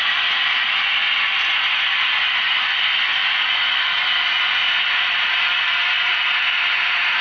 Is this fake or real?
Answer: real